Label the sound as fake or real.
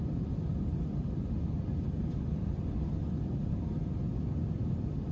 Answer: fake